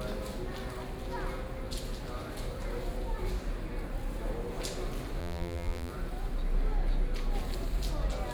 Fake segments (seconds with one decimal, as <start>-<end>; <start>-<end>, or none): 5.2-5.9